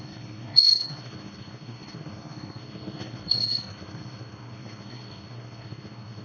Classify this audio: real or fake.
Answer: fake